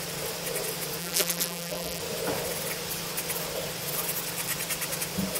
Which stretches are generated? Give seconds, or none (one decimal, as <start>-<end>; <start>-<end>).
1.0-2.0